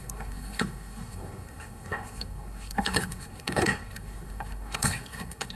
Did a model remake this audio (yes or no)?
yes